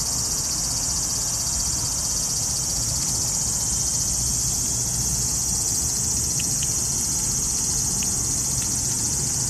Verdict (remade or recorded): recorded